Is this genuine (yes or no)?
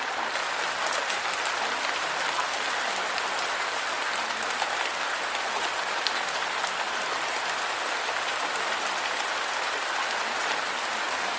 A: yes